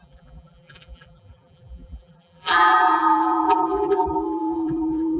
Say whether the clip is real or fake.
fake